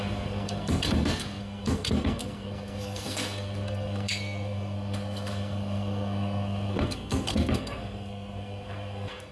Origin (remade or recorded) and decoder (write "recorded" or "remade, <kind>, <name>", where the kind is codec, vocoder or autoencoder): remade, codec, SNAC